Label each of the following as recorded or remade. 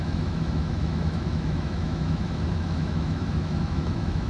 remade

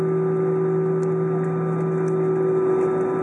recorded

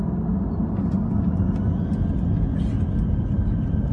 recorded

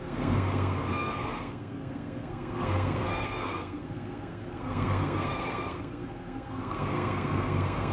remade